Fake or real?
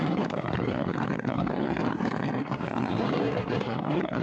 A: fake